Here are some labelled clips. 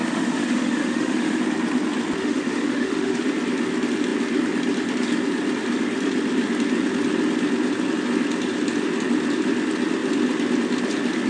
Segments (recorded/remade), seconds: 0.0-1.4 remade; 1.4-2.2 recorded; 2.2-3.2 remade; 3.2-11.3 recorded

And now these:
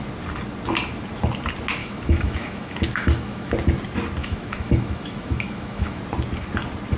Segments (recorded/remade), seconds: 0.0-1.8 recorded; 1.8-3.5 remade; 3.5-4.2 recorded; 4.2-6.0 remade; 6.0-7.0 recorded

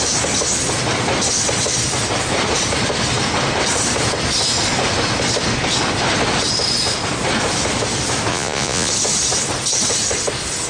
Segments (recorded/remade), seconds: 0.0-8.3 recorded; 8.3-8.9 remade; 8.9-10.7 recorded

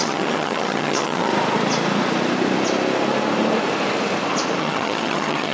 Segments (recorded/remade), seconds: 0.0-1.3 remade; 1.3-4.6 recorded; 4.6-5.5 remade

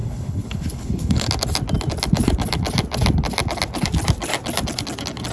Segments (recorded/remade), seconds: 0.0-1.3 remade; 1.3-5.3 recorded

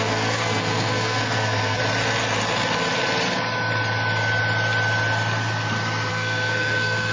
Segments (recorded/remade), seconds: 0.0-1.8 remade; 1.8-6.1 recorded; 6.1-7.1 remade